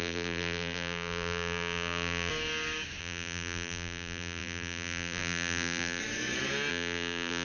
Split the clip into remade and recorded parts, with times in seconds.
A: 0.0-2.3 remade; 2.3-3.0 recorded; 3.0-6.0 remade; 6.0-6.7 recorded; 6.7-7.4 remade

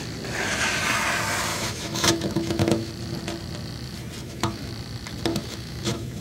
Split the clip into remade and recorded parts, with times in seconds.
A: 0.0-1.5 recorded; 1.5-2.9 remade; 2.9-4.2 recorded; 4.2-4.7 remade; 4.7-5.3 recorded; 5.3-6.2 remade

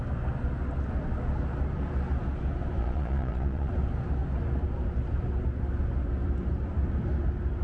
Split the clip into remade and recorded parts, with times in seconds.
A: 0.0-2.8 recorded; 2.8-3.7 remade; 3.7-7.6 recorded

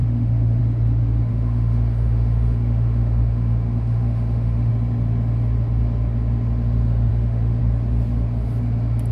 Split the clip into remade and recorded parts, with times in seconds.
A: 0.0-0.6 remade; 0.6-1.3 recorded; 1.3-4.7 remade; 4.7-7.1 recorded; 7.1-7.6 remade; 7.6-9.1 recorded

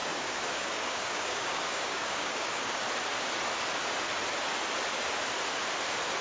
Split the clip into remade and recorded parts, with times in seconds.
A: 0.0-2.8 remade; 2.8-6.2 recorded

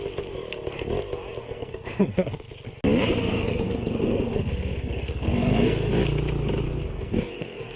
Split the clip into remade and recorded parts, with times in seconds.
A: 0.0-1.4 recorded; 1.4-2.5 remade; 2.5-3.3 recorded; 3.3-5.9 remade; 5.9-6.9 recorded; 6.9-7.8 remade

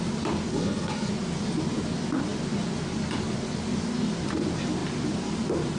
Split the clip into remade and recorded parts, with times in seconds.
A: 0.0-0.5 recorded; 0.5-1.1 remade; 1.1-5.8 recorded